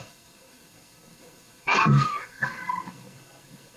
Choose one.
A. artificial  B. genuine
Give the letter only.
A